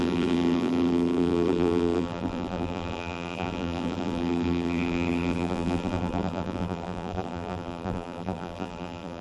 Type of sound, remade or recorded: remade